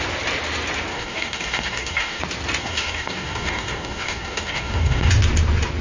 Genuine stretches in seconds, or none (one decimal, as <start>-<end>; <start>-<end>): 0.0-0.9; 2.2-2.6; 5.1-5.8